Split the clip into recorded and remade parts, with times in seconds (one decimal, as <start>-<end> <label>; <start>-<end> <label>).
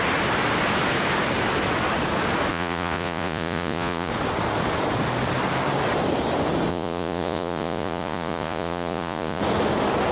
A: 0.0-2.5 recorded; 2.5-4.1 remade; 4.1-6.7 recorded; 6.7-9.4 remade; 9.4-10.1 recorded